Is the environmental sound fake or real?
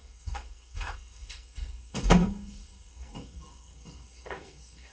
fake